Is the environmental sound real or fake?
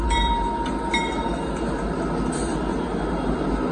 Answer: real